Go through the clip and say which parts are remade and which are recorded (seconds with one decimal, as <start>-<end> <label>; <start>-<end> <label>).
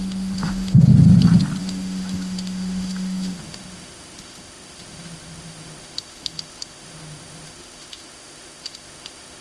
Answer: 0.0-0.9 remade; 0.9-1.6 recorded; 1.6-9.4 remade